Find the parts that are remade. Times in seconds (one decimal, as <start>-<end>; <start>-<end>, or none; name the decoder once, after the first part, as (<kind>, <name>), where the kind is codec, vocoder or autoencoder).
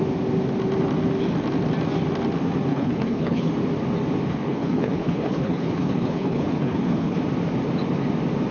2.7-3.5 (codec, HILCodec); 4.3-7.2